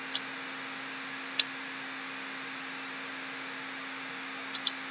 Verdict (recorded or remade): recorded